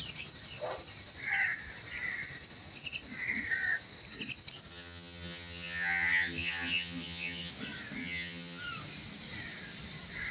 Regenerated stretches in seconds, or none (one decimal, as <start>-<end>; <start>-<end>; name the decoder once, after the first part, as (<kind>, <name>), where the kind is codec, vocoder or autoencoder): 4.7-7.5 (vocoder, HiFi-GAN); 8.0-8.6